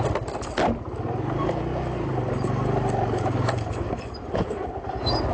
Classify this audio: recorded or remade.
recorded